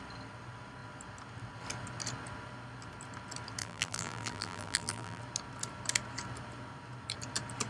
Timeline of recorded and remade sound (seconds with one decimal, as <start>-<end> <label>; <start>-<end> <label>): 0.0-3.6 recorded; 3.6-5.2 remade; 5.2-7.7 recorded